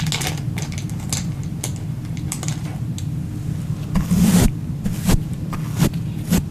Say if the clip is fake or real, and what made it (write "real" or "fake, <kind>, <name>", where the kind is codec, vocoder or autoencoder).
real